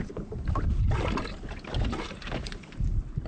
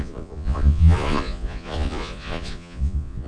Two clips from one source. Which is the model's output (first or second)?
second